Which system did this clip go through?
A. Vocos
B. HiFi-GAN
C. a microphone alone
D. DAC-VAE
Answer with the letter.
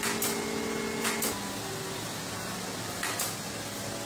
C